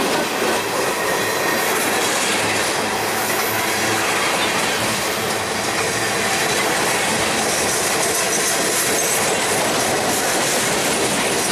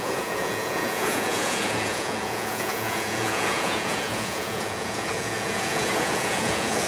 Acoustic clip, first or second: first